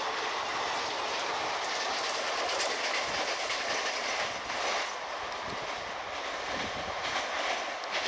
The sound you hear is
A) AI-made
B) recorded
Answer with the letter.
B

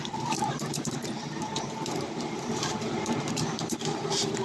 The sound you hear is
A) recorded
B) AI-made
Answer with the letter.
B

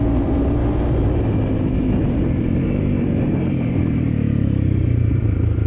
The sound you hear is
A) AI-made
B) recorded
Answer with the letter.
A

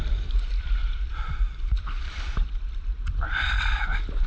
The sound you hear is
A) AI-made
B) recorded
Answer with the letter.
A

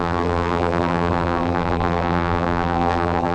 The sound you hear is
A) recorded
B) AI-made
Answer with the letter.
B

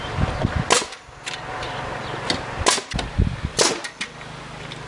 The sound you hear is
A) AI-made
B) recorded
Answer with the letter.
B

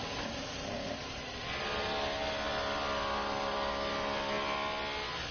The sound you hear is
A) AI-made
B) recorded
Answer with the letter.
B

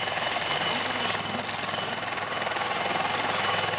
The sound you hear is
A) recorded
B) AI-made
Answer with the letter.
A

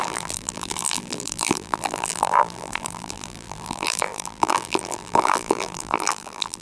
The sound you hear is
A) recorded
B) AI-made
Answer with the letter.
B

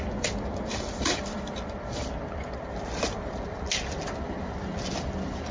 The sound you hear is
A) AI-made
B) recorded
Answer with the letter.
A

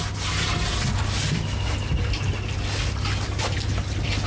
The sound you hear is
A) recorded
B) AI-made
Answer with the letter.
A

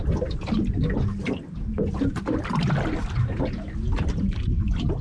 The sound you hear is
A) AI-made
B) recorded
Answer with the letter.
B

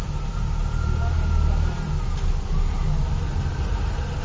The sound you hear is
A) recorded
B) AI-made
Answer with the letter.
A